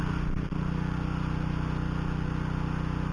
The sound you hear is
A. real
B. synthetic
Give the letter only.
A